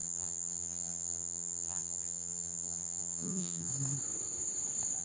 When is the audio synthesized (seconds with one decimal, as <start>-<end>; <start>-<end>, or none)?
0.0-3.7